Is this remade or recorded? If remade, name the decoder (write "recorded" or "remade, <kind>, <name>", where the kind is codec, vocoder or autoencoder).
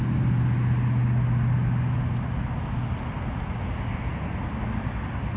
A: recorded